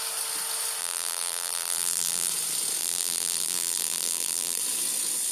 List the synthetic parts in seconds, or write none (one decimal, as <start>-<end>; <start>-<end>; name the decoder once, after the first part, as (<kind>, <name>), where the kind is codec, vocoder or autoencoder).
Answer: 0.8-2.3 (vocoder, BigVGAN v2); 2.8-4.6